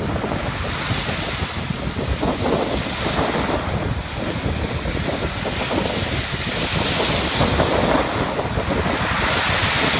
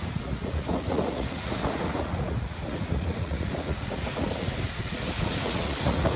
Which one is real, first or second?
first